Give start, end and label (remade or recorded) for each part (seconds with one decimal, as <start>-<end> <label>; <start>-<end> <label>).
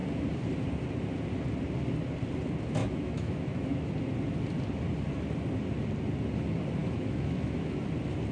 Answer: 0.0-2.8 recorded; 2.8-3.9 remade; 3.9-6.8 recorded; 6.8-7.8 remade; 7.8-8.3 recorded